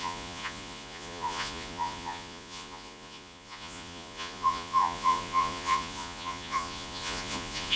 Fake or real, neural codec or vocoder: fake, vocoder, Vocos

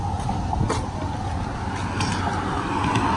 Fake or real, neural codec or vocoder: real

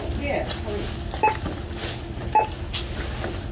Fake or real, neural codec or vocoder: real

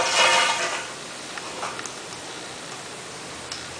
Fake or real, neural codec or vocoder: real